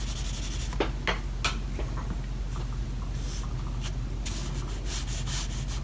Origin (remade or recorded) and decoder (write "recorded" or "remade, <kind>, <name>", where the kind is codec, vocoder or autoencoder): recorded